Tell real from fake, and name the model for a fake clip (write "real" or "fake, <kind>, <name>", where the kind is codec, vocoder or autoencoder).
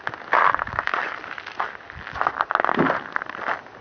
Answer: real